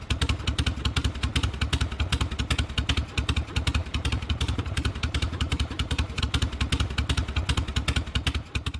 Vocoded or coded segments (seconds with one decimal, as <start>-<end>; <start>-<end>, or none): 3.8-6.2